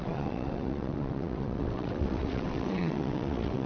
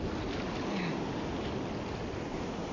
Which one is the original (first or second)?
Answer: second